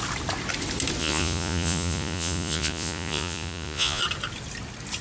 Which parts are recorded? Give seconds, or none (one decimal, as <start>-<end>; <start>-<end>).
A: 0.0-1.0; 4.0-5.0